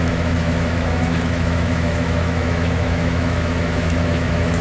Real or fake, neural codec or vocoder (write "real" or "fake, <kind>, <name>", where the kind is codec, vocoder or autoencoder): fake, autoencoder, DAC-VAE